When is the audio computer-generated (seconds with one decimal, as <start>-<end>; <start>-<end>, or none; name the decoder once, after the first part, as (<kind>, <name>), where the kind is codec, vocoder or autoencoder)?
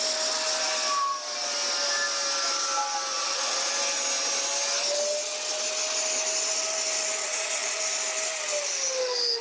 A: 3.1-3.7 (vocoder, Vocos); 7.2-7.8